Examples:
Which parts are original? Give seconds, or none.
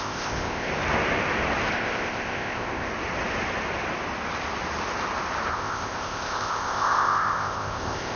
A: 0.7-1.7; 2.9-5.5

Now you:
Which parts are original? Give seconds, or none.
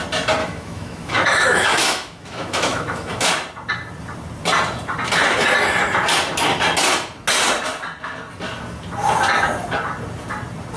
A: 0.0-0.4; 3.3-10.8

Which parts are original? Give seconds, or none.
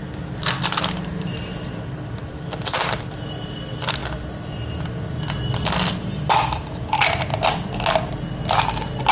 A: 4.0-5.2; 7.3-8.5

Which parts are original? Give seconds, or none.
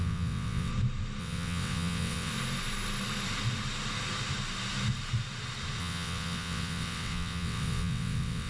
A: 0.7-1.2; 2.3-5.8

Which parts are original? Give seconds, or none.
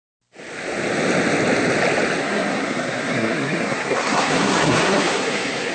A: 0.0-2.2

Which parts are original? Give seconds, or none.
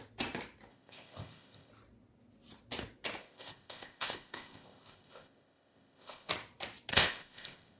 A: 0.0-0.7; 1.7-3.2; 6.3-6.9